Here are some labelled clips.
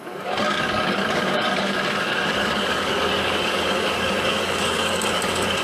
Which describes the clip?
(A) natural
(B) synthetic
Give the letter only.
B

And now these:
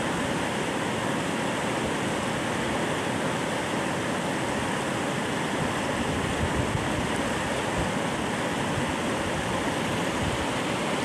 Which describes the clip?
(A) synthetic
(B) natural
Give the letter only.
B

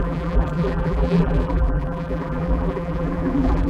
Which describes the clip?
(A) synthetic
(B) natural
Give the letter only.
A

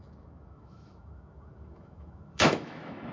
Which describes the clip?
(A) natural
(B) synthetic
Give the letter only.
B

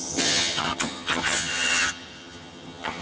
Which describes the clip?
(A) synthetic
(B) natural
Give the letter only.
A